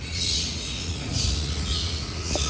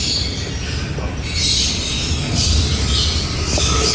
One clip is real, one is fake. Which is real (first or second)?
second